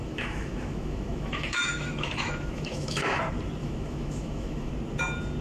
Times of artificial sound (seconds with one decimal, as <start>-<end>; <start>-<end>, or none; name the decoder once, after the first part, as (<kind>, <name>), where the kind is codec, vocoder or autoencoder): 0.0-3.2 (autoencoder, DAC-VAE); 3.6-4.7

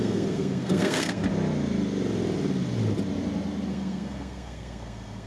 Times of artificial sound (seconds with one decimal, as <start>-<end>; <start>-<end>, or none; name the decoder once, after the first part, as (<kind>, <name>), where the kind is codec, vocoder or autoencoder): 0.0-1.2 (codec, SNAC); 3.7-5.3

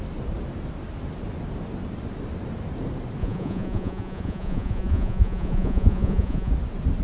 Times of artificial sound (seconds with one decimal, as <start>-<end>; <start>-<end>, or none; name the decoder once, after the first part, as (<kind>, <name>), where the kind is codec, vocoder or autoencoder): 3.2-6.5 (vocoder, Vocos)

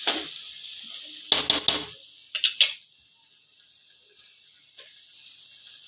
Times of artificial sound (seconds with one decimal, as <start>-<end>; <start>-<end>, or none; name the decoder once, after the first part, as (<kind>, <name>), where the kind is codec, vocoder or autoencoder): none

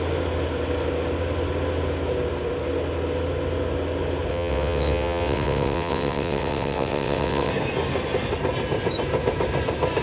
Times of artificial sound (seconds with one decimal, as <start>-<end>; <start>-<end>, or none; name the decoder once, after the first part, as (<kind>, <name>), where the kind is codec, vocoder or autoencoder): 4.3-7.5 (vocoder, WaveNeXt)

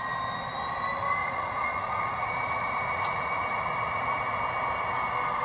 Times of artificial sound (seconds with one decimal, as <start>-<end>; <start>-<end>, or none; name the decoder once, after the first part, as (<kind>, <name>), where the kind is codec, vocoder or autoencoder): 1.2-4.4 (vocoder, Vocos)